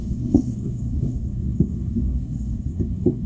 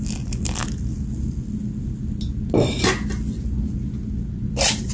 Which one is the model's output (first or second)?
first